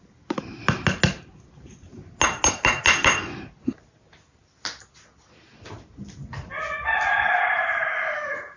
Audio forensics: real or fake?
real